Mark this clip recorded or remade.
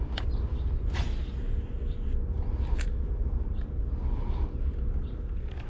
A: recorded